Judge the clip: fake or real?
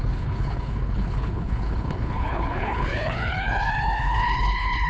fake